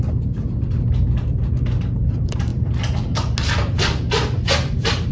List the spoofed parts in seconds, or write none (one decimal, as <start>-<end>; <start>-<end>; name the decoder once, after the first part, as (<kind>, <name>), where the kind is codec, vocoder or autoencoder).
none